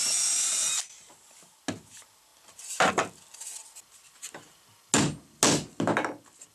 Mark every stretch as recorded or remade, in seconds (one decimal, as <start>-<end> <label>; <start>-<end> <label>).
0.0-6.5 recorded